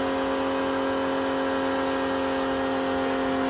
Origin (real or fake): real